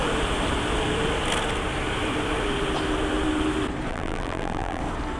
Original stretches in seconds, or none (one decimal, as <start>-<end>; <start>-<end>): 0.0-3.9; 4.8-5.2